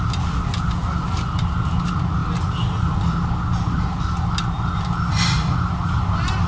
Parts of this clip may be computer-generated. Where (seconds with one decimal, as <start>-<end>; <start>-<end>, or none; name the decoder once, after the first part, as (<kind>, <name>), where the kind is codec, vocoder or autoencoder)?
none